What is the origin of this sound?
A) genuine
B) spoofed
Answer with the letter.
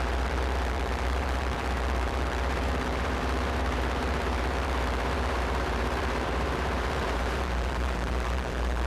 B